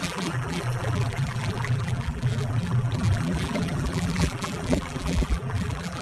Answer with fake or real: fake